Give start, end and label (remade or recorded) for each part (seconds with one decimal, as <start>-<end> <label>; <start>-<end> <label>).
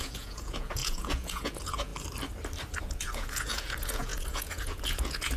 0.0-1.9 remade; 1.9-2.8 recorded; 2.8-5.4 remade